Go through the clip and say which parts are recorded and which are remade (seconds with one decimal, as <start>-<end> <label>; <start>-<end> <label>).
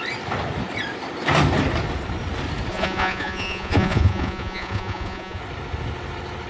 0.0-2.7 recorded; 2.7-5.4 remade; 5.4-6.5 recorded